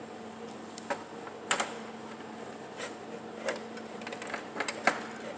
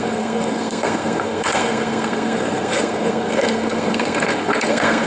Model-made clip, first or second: second